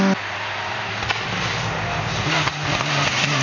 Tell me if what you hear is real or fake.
real